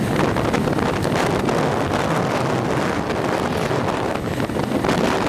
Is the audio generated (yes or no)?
no